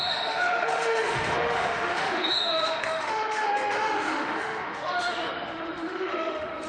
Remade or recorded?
remade